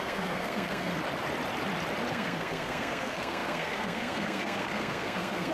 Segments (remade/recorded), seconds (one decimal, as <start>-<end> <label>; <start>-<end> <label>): 0.0-0.9 remade; 0.9-2.1 recorded; 2.1-5.5 remade